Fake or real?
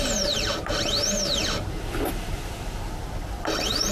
real